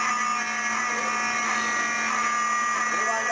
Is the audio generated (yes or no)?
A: no